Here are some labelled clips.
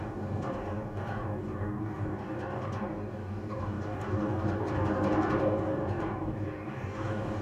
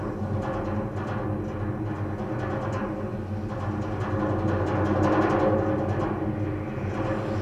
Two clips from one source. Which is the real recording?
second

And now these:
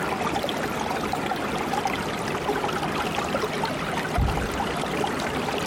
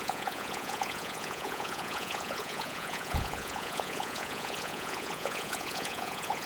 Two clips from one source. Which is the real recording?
first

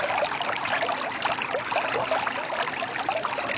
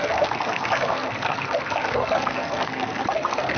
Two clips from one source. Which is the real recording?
first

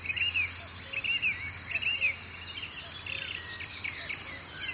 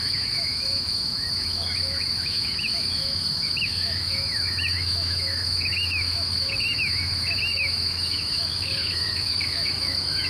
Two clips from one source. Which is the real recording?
first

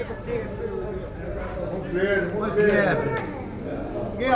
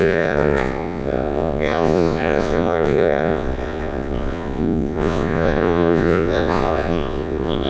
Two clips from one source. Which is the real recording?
first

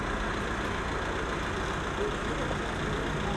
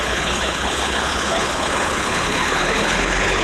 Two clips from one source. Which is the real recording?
first